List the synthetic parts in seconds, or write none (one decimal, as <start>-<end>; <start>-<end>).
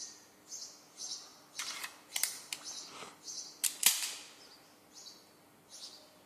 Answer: none